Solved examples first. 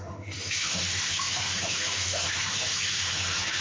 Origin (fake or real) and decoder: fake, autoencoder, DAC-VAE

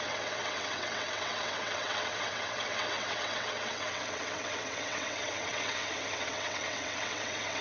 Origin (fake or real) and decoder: fake, vocoder, WaveNeXt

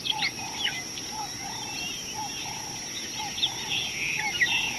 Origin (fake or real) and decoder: real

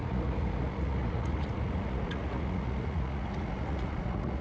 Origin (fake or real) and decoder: fake, vocoder, Vocos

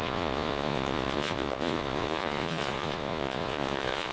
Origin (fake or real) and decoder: fake, vocoder, Vocos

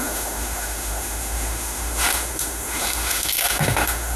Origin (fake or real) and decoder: fake, autoencoder, DAC-VAE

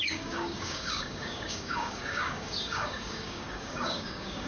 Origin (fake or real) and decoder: fake, codec, DAC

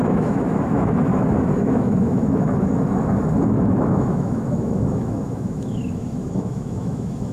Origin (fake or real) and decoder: fake, autoencoder, DAC-VAE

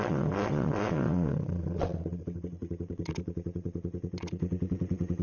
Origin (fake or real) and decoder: fake, vocoder, WaveNeXt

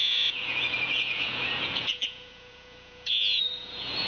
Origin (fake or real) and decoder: fake, vocoder, Vocos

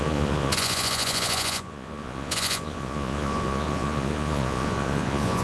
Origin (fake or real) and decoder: fake, vocoder, Vocos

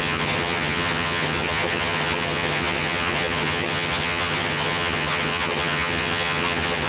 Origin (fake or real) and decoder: fake, vocoder, HiFi-GAN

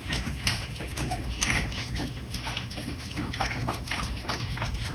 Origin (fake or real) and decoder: fake, autoencoder, DAC-VAE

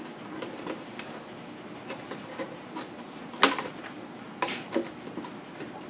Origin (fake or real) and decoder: real